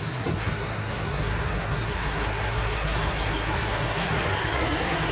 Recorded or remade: remade